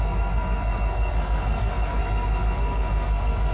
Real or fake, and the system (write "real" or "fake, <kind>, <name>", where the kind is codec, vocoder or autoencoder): fake, codec, SNAC